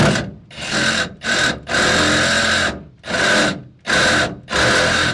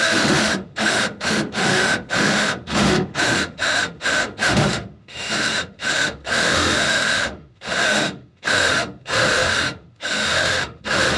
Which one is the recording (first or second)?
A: first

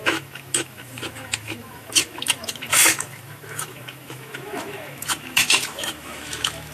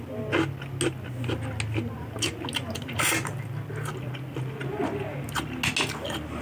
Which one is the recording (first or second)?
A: second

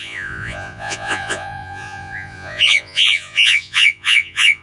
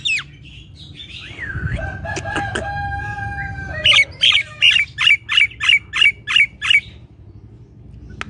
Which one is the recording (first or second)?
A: second